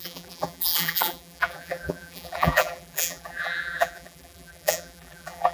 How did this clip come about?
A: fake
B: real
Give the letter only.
A